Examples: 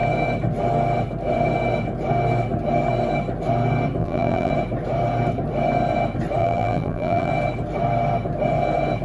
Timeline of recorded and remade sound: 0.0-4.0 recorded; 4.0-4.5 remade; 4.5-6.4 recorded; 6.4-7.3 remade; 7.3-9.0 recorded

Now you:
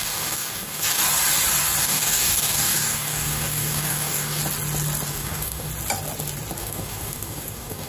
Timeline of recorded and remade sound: 0.0-1.0 remade; 1.0-1.8 recorded; 1.8-4.4 remade; 4.4-5.1 recorded; 5.1-5.7 remade; 5.7-6.6 recorded; 6.6-7.9 remade

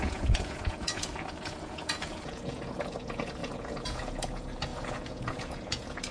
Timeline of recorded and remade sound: 0.0-6.1 remade